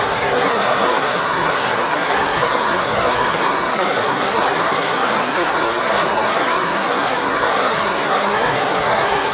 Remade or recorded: remade